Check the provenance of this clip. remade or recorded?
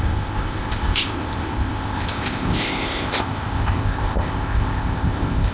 remade